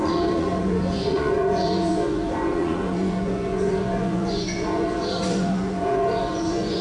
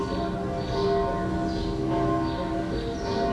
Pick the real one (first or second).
second